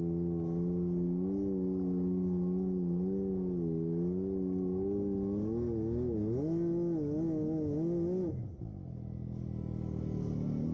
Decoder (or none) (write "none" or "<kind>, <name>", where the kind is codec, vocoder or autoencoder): none